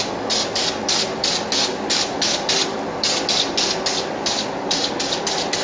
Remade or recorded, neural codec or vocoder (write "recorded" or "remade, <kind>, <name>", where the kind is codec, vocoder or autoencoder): recorded